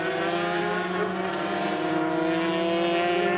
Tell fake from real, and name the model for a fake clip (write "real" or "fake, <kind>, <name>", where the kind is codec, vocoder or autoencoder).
real